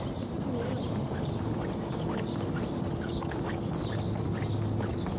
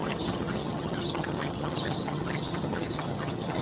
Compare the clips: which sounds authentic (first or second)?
first